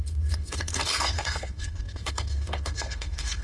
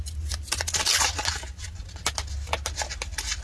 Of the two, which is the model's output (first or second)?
first